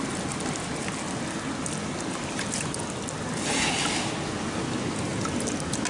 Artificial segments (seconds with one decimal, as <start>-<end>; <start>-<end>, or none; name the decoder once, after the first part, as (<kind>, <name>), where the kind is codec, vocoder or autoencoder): none